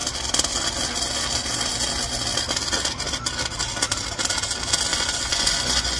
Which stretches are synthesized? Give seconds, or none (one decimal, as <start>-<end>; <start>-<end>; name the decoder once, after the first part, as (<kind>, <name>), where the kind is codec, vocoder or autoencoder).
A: 4.9-6.0 (vocoder, Vocos)